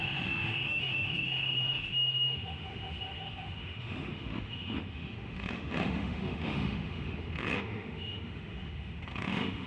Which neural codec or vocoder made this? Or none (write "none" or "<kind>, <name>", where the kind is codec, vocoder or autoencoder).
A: autoencoder, DAC-VAE